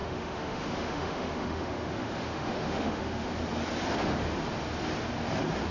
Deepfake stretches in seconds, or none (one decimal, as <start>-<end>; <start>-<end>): 0.0-3.3